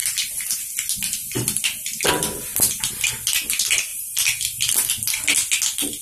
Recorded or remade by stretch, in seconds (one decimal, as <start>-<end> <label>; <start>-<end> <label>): 0.0-2.1 remade; 2.1-2.5 recorded; 2.5-3.1 remade; 3.1-3.9 recorded; 3.9-4.9 remade; 4.9-6.0 recorded